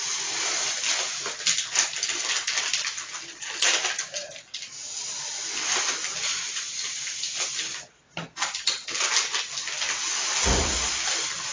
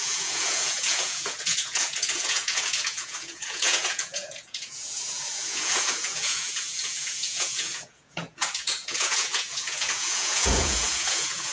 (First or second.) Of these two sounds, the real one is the first